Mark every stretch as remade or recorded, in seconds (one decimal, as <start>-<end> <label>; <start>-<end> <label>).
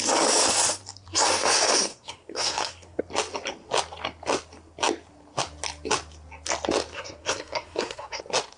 0.0-1.9 recorded; 1.9-3.0 remade; 3.0-6.9 recorded; 6.9-8.2 remade; 8.2-8.6 recorded